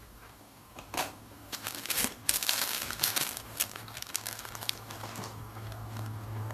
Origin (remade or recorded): remade